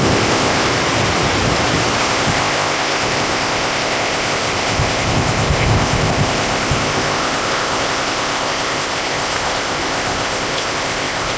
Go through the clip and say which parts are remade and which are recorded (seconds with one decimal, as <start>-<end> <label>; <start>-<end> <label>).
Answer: 0.0-0.7 remade; 0.7-2.0 recorded; 2.0-11.4 remade